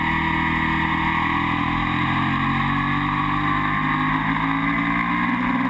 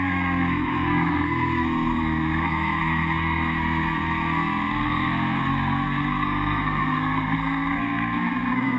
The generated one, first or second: second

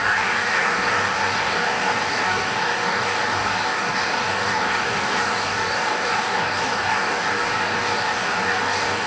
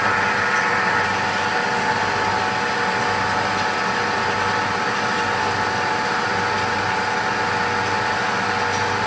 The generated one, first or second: first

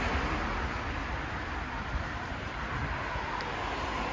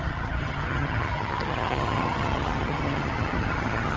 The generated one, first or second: second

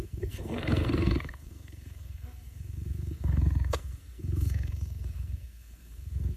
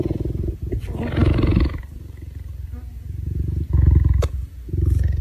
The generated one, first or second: first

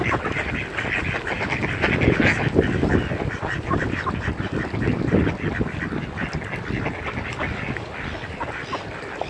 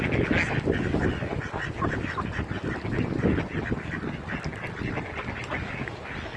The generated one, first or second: first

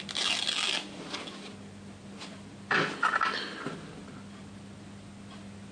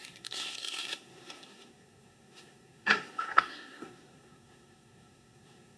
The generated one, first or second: second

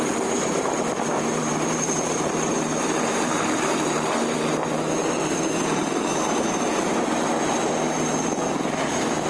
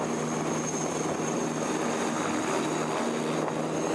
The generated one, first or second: first